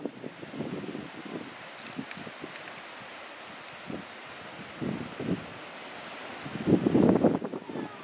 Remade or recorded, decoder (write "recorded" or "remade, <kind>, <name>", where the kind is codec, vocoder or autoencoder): recorded